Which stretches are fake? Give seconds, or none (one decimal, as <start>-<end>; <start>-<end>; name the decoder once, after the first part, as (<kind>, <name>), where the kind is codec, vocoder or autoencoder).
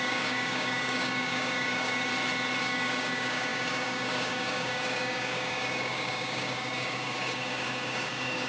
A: 0.0-2.1 (codec, DAC); 2.6-8.5